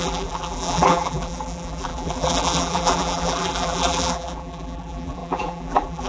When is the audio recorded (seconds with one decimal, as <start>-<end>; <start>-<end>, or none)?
none